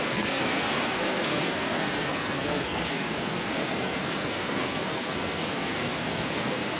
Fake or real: fake